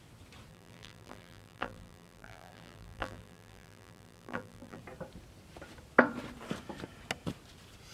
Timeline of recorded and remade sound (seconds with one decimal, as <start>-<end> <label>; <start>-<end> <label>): 0.0-0.5 recorded; 0.5-4.8 remade; 4.8-7.9 recorded